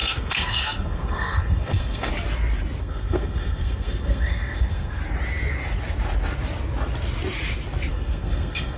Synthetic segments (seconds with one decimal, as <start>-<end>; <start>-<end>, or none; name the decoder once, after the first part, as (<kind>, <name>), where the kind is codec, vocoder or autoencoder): 0.0-2.1 (codec, SNAC); 2.8-5.0; 7.9-8.8